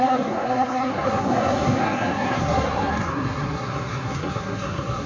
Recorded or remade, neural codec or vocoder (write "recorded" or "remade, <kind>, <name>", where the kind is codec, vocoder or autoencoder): remade, codec, SNAC